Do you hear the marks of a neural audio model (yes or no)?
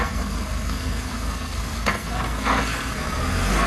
yes